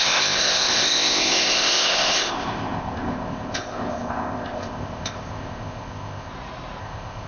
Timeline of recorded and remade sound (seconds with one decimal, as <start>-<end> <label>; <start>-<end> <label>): 0.0-6.3 remade; 6.3-6.8 recorded; 6.8-7.3 remade